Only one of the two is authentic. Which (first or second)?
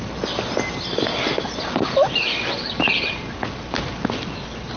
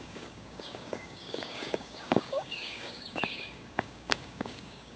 first